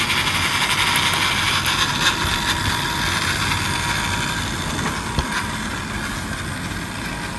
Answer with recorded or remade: recorded